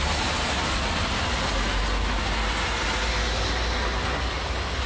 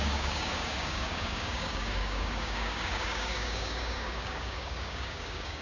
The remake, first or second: second